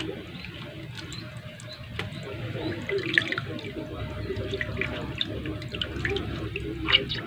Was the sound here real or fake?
real